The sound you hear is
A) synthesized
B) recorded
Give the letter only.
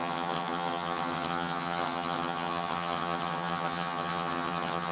A